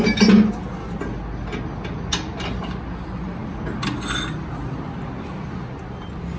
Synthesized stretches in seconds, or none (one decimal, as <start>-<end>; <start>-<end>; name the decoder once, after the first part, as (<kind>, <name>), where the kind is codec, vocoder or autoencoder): none